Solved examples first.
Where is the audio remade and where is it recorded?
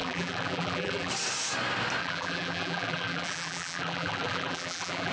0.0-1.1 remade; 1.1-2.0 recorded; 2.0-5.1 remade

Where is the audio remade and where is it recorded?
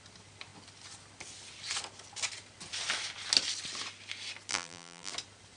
0.0-4.5 recorded; 4.5-5.1 remade; 5.1-5.6 recorded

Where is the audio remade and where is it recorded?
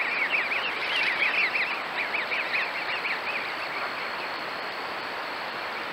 0.0-5.2 recorded; 5.2-5.9 remade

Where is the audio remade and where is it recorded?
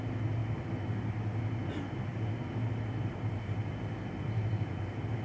0.0-2.1 recorded; 2.1-4.7 remade; 4.7-5.2 recorded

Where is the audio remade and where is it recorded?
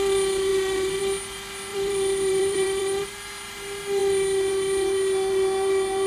0.0-0.5 recorded; 0.5-1.0 remade; 1.0-1.7 recorded; 1.7-3.1 remade; 3.1-6.1 recorded